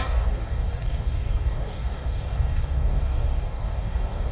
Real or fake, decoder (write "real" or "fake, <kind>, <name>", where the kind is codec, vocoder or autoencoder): fake, codec, DAC